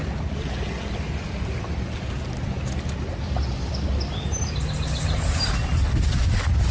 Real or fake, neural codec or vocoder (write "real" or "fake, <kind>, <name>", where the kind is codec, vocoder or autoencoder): real